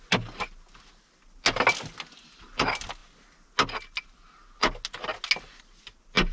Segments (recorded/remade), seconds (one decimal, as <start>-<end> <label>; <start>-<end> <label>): 0.0-6.3 recorded